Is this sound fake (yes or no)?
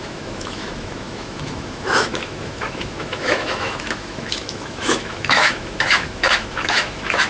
yes